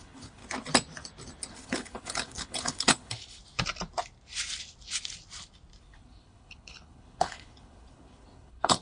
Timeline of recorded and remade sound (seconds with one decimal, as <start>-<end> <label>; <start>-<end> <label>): 0.0-0.4 remade; 0.4-1.5 recorded; 1.5-3.4 remade; 3.4-5.8 recorded; 5.8-8.8 remade